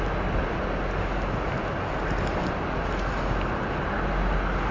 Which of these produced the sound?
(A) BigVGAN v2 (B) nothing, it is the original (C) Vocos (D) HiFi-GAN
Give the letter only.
B